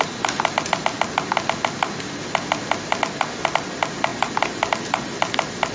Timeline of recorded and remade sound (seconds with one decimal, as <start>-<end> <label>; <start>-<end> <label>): 0.0-5.7 recorded